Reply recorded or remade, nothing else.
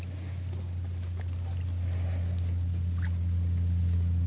recorded